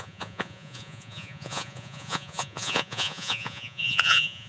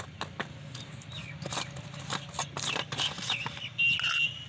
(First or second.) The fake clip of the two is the first